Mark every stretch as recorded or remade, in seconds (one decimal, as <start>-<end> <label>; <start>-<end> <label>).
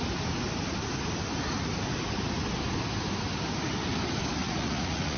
0.0-4.4 recorded; 4.4-5.2 remade